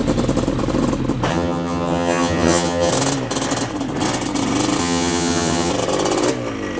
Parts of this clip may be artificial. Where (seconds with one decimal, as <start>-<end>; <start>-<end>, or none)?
1.3-2.9; 4.8-5.7

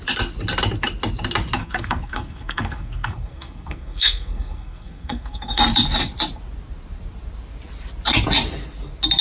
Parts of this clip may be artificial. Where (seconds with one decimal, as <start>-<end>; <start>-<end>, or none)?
1.6-5.6

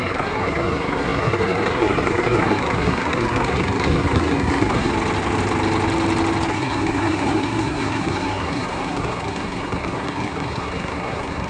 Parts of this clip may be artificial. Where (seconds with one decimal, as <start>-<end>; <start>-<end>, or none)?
0.0-4.9; 6.5-11.5

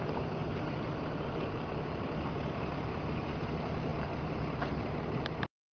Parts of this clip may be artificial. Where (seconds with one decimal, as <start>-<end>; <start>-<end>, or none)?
0.0-5.7